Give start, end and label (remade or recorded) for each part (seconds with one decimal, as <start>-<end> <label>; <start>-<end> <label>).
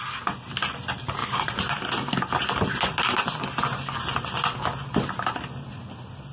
0.0-1.2 recorded; 1.2-1.9 remade; 1.9-6.3 recorded